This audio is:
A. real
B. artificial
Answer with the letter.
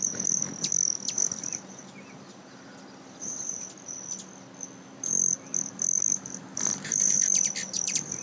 A